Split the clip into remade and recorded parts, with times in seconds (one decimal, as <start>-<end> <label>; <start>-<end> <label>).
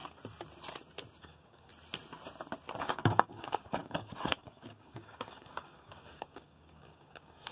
0.0-1.2 recorded; 1.2-1.7 remade; 1.7-2.8 recorded; 2.8-7.5 remade